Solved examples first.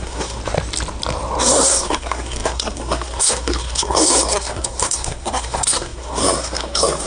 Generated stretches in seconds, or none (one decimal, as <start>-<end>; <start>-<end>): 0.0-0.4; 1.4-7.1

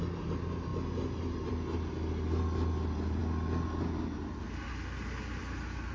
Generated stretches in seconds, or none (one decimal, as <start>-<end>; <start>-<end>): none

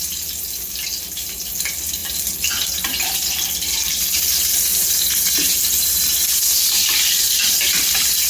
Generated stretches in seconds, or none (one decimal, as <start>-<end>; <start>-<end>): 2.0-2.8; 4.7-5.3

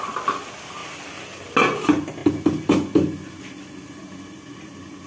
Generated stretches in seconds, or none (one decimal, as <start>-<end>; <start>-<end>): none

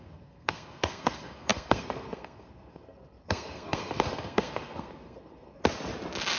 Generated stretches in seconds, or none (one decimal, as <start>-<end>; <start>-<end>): 0.0-5.6

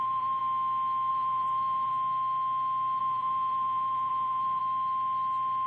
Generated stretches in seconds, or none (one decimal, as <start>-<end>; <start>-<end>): 0.0-0.4; 1.1-1.9; 3.0-4.6